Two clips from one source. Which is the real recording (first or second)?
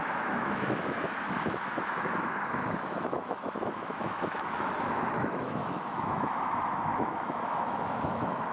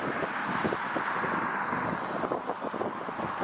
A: second